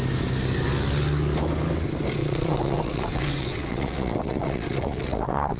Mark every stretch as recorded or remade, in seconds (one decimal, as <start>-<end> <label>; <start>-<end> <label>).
0.0-2.2 recorded; 2.2-5.6 remade